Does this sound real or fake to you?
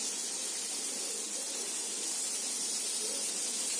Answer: real